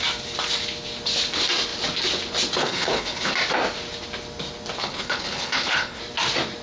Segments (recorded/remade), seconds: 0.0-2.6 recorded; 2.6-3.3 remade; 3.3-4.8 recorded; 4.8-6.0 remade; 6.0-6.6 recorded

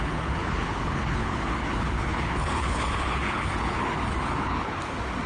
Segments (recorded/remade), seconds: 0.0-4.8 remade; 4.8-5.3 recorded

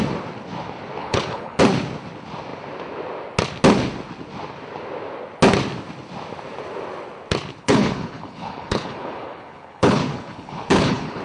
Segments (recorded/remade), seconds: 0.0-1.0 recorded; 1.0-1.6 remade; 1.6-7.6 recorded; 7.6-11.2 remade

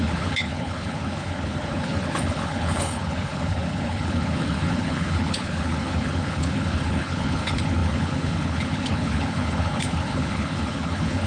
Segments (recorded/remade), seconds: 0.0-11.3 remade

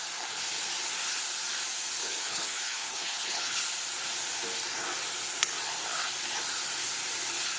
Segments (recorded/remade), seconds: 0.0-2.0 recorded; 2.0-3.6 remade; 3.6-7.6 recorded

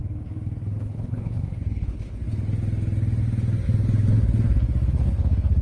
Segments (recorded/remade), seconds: 0.0-0.8 recorded; 0.8-2.2 remade; 2.2-4.9 recorded; 4.9-5.6 remade

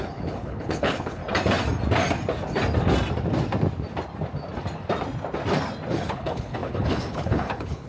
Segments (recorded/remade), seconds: 0.0-1.2 remade; 1.2-5.9 recorded; 5.9-7.9 remade